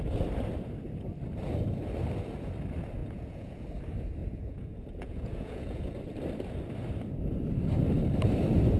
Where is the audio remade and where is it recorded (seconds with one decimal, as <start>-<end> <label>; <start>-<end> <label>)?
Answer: 0.0-3.0 recorded; 3.0-3.6 remade; 3.6-4.2 recorded; 4.2-6.0 remade; 6.0-8.8 recorded